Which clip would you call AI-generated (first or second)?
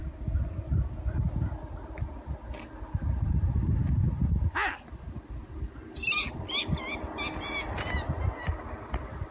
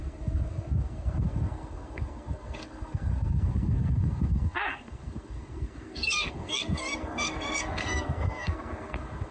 second